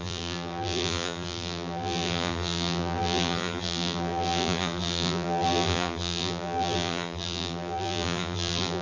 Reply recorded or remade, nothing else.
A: remade